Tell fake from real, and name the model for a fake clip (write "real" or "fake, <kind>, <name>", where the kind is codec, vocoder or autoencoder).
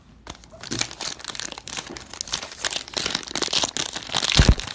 real